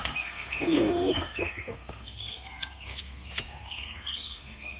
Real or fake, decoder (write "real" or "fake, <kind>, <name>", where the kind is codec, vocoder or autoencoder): fake, codec, SNAC